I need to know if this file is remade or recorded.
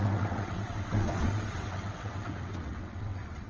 remade